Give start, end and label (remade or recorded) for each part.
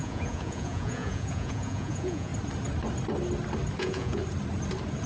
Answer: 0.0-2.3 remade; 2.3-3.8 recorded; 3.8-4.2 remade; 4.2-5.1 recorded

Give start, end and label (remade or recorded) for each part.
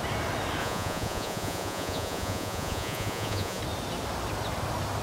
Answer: 0.0-0.6 recorded; 0.6-3.6 remade; 3.6-5.0 recorded